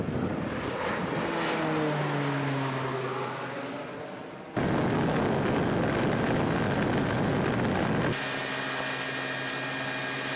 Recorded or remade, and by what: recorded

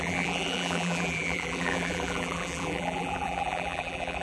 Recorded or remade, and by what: remade, vocoder, BigVGAN v2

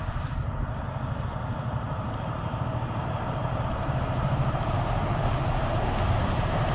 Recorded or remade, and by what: remade, vocoder, BigVGAN v2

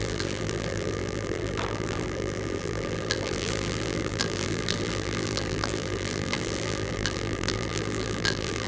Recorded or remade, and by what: remade, vocoder, BigVGAN v2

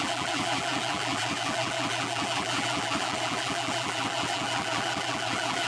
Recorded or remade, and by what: remade, vocoder, BigVGAN v2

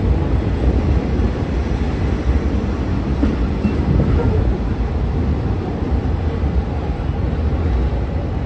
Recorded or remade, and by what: remade, vocoder, BigVGAN v2